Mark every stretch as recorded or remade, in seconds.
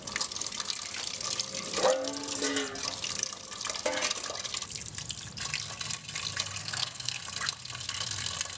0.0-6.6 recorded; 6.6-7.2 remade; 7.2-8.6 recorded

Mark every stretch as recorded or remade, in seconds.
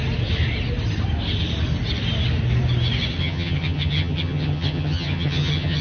0.0-3.2 recorded; 3.2-5.8 remade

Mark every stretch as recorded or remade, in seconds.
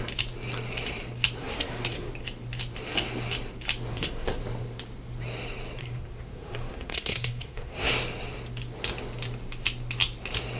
0.0-1.4 recorded; 1.4-2.1 remade; 2.1-3.9 recorded; 3.9-4.4 remade; 4.4-5.8 recorded; 5.8-7.9 remade; 7.9-10.6 recorded